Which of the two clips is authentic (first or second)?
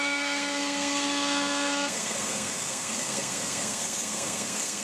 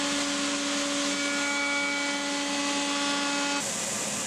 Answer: second